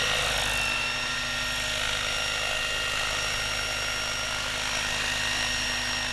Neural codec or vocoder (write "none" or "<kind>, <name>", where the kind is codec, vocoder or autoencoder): none